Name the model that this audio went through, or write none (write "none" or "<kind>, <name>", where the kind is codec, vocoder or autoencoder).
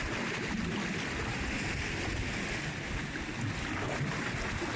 none